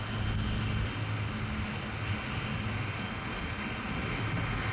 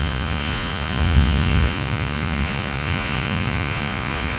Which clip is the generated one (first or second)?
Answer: second